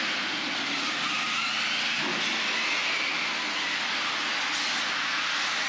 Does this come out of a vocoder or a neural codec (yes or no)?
no